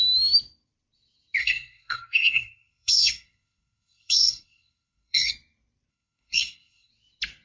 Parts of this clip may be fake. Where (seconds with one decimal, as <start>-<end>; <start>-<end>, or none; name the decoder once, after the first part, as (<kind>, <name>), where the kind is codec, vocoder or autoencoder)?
1.4-5.3 (codec, SNAC); 5.9-6.9